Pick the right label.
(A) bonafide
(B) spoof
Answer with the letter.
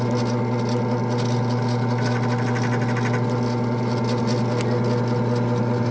A